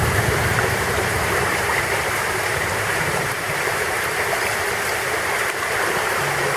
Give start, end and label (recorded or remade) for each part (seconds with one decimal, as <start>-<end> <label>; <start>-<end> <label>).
0.0-4.0 remade; 4.0-6.6 recorded